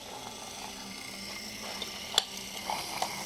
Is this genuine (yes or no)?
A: yes